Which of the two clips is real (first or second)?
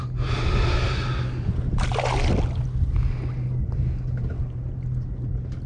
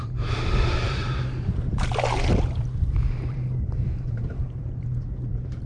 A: first